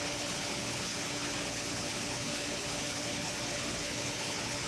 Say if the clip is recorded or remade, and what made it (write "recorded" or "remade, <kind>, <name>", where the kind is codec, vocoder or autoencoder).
remade, codec, HILCodec